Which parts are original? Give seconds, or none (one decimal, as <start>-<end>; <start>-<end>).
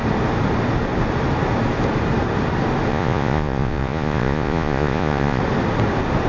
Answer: 0.0-2.9; 5.4-6.3